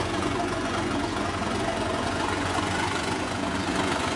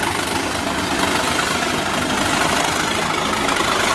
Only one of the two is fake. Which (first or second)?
first